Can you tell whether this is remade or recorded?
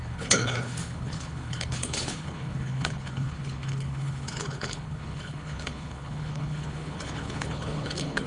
remade